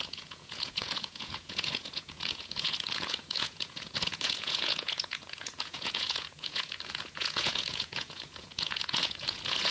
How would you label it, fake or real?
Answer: fake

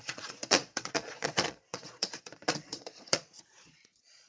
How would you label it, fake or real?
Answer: fake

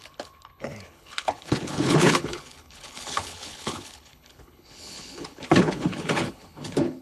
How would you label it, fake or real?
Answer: fake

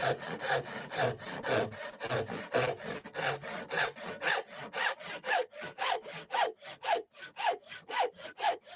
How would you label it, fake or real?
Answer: real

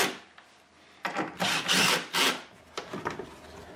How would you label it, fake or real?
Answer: real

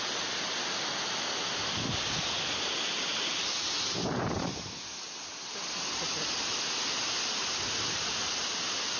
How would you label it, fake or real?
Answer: real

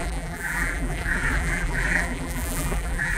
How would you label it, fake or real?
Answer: fake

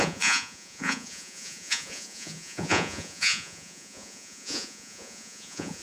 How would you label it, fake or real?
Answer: fake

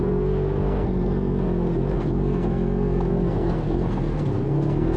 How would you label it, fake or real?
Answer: fake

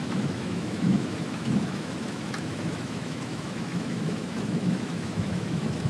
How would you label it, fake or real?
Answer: fake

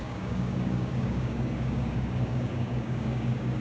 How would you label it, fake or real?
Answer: fake